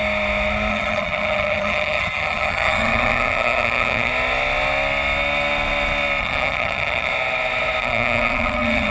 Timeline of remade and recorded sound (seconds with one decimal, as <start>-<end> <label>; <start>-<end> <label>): 0.0-0.7 recorded; 0.7-4.1 remade; 4.1-6.2 recorded; 6.2-7.1 remade; 7.1-7.8 recorded; 7.8-8.9 remade